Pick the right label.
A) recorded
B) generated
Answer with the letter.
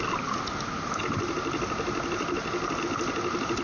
A